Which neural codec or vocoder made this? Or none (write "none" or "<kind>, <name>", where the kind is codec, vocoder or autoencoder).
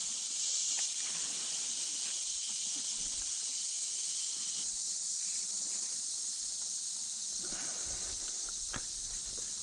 none